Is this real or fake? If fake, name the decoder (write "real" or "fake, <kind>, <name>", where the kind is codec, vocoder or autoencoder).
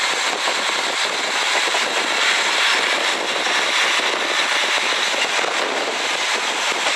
real